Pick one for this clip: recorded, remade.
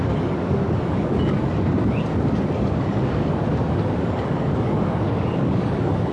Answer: remade